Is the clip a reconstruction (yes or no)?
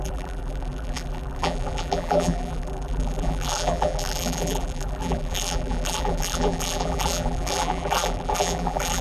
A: yes